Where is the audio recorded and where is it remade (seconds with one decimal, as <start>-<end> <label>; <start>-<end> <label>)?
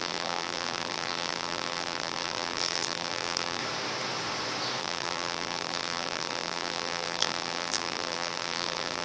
0.0-3.6 remade; 3.6-4.8 recorded; 4.8-9.0 remade